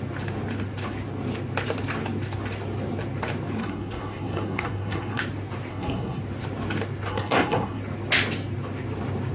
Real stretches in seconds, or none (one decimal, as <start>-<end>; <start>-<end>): 0.0-3.6; 5.2-5.7; 6.2-7.1; 7.8-9.3